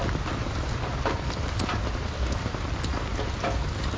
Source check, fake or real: real